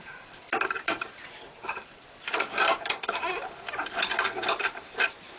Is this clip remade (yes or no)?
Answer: yes